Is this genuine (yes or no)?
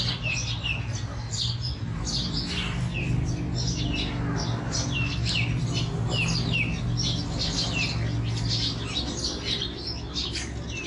yes